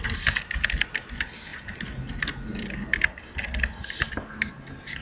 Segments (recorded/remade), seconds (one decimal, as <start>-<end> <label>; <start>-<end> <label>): 0.0-5.0 recorded